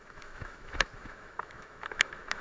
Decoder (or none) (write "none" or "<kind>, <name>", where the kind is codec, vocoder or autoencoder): autoencoder, DAC-VAE